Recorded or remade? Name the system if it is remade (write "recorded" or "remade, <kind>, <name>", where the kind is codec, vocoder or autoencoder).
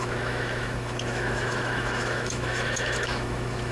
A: remade, autoencoder, DAC-VAE